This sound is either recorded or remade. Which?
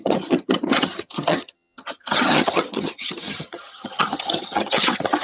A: remade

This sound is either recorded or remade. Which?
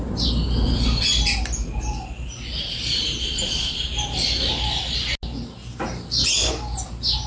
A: recorded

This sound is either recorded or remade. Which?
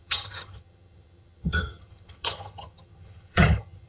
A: remade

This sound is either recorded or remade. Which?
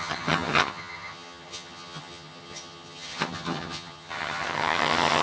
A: remade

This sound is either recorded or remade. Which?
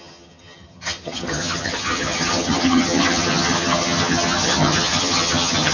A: remade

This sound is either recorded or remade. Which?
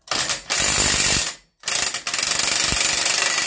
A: recorded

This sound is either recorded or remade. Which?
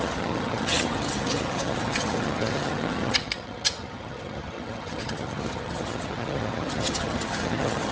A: remade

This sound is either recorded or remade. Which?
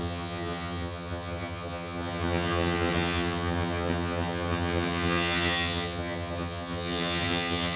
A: remade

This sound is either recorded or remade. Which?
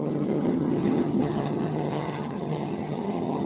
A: remade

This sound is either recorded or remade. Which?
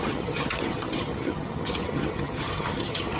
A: remade